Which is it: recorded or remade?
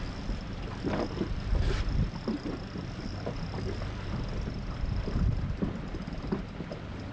recorded